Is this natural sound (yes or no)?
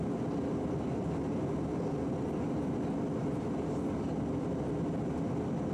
yes